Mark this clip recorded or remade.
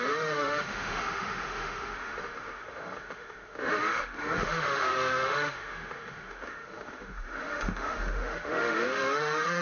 remade